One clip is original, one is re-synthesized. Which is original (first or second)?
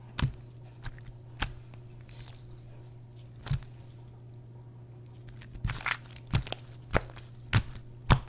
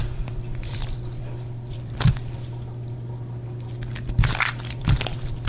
first